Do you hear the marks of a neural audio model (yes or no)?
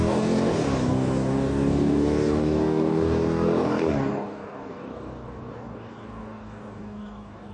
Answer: yes